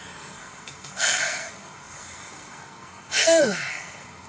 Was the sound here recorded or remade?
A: remade